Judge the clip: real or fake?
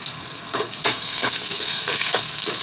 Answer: fake